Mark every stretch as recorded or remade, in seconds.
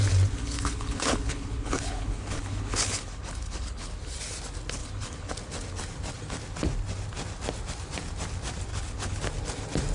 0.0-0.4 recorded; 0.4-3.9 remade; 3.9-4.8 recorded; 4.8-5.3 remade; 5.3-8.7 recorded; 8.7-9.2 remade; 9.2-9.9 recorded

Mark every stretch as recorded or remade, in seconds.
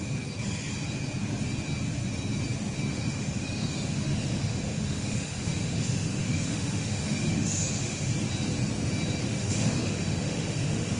0.0-2.9 recorded; 2.9-8.1 remade; 8.1-9.2 recorded; 9.2-11.0 remade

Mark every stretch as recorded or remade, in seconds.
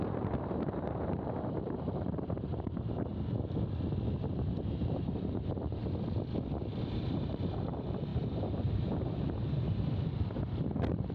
0.0-3.1 remade; 3.1-4.5 recorded; 4.5-5.8 remade; 5.8-6.8 recorded; 6.8-11.1 remade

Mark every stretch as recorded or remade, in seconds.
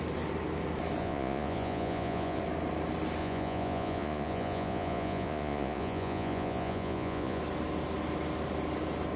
0.0-1.0 recorded; 1.0-2.4 remade; 2.4-3.2 recorded; 3.2-7.4 remade; 7.4-9.2 recorded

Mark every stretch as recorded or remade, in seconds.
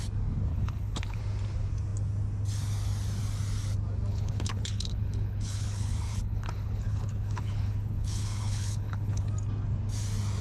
0.0-0.5 recorded; 0.5-1.2 remade; 1.2-4.1 recorded; 4.1-9.3 remade; 9.3-10.4 recorded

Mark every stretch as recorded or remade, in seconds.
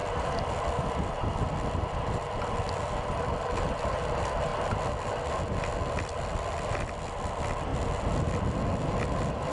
0.0-9.5 recorded